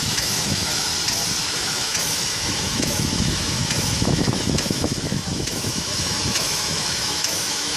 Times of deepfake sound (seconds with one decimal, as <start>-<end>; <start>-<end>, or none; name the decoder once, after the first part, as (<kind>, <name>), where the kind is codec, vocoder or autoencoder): 0.0-0.9 (autoencoder, DAC-VAE); 1.4-7.8